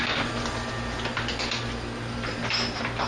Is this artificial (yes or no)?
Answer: no